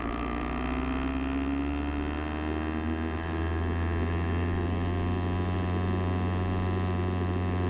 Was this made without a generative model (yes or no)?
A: yes